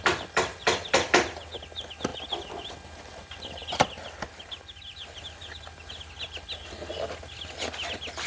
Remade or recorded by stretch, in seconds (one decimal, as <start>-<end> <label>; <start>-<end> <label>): 0.0-8.3 recorded